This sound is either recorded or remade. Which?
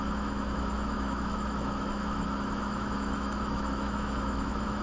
remade